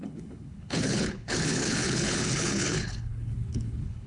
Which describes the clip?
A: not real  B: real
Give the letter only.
A